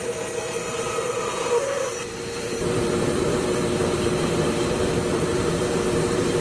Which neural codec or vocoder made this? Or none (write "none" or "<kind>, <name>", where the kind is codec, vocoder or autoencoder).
vocoder, BigVGAN v2